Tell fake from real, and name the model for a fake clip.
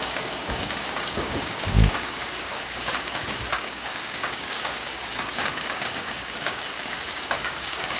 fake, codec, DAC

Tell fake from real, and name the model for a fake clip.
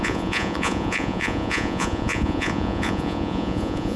fake, vocoder, Vocos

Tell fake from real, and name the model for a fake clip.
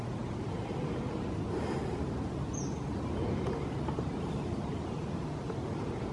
real